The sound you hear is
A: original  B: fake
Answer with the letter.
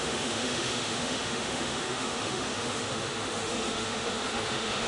B